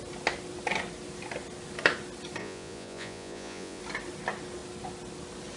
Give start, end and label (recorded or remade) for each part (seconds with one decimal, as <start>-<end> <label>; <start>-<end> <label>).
0.0-2.4 recorded; 2.4-3.8 remade; 3.8-5.6 recorded